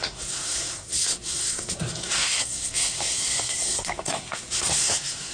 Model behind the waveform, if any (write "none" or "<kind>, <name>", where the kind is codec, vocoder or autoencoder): codec, SNAC